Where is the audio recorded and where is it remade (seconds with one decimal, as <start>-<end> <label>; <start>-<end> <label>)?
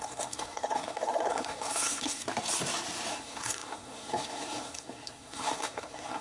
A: 0.0-2.2 remade; 2.2-3.1 recorded; 3.1-6.2 remade